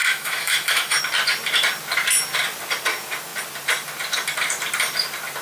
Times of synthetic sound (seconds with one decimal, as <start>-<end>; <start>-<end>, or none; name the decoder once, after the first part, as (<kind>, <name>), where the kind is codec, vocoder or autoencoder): 0.0-1.0 (autoencoder, DAC-VAE)